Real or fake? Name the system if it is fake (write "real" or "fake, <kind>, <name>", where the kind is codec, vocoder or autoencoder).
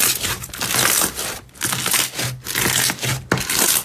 real